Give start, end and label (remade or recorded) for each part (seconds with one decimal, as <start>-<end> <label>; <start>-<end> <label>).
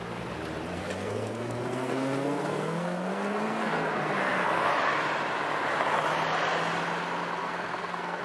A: 0.0-0.7 recorded; 0.7-4.7 remade; 4.7-7.4 recorded; 7.4-8.2 remade